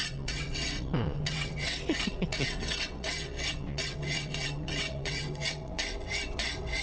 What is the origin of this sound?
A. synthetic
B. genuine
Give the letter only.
A